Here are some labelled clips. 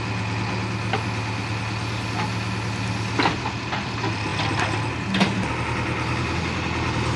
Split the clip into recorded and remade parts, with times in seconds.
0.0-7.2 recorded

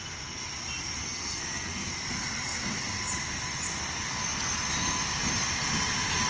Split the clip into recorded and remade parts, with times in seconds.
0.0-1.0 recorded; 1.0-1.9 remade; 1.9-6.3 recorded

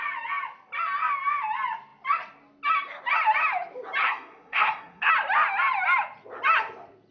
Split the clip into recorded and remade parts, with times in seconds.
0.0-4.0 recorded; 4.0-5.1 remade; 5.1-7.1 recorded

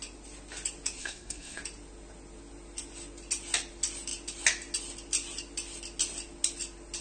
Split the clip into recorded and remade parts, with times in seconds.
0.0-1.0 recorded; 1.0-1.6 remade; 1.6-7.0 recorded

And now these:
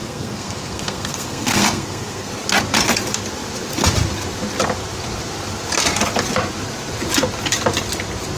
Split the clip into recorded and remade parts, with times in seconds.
0.0-2.3 remade; 2.3-8.4 recorded

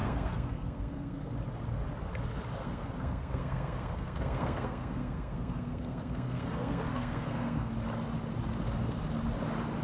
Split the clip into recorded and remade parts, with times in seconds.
0.0-1.3 remade; 1.3-2.6 recorded; 2.6-7.7 remade; 7.7-9.8 recorded